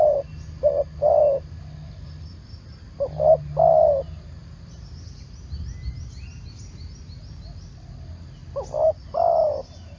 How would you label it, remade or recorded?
recorded